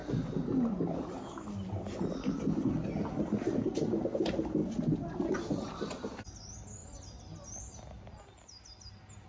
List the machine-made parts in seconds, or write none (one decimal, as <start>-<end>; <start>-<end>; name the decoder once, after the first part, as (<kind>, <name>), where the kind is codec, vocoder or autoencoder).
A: none